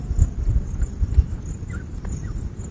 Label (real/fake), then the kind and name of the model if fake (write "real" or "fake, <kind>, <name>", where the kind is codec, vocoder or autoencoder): real